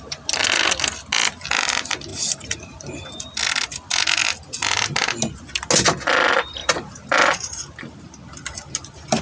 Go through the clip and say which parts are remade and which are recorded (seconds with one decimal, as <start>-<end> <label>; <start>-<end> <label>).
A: 0.0-2.1 recorded; 2.1-3.2 remade; 3.2-6.6 recorded; 6.6-8.0 remade; 8.0-9.2 recorded